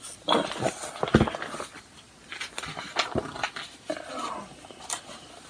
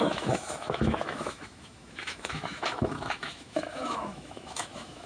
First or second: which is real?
first